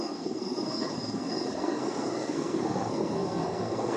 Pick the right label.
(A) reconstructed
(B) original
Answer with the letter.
A